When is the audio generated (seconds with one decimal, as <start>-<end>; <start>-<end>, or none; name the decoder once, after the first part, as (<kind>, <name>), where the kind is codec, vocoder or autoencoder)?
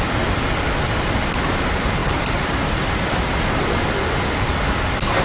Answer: none